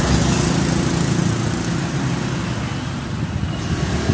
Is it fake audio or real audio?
real